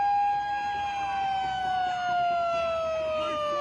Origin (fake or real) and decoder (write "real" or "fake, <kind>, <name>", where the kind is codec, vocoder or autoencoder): real